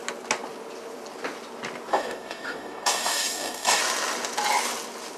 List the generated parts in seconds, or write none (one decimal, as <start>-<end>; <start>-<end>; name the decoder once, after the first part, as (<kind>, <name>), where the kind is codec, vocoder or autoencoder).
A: 1.9-3.8 (codec, DAC)